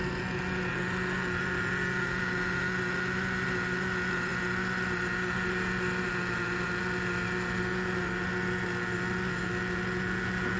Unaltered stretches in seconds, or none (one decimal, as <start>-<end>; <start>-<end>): 0.0-10.6